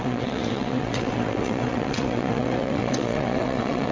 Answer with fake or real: fake